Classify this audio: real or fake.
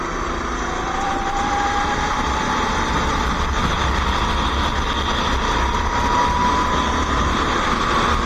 real